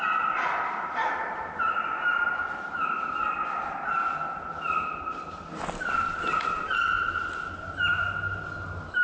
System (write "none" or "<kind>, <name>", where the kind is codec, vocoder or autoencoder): none